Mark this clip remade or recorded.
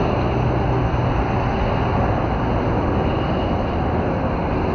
recorded